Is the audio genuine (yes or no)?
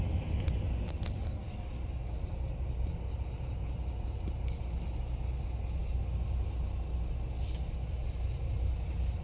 yes